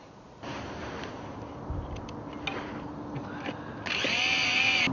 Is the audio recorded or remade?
recorded